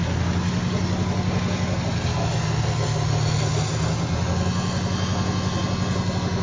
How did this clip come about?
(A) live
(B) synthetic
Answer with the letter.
A